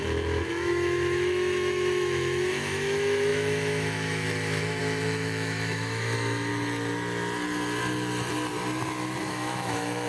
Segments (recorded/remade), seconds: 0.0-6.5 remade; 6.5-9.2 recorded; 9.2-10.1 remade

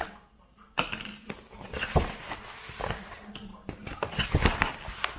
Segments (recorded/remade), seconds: 0.0-5.2 recorded

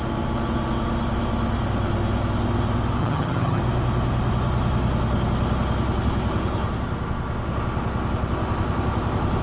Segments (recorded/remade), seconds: 0.0-3.0 recorded; 3.0-3.6 remade; 3.6-9.4 recorded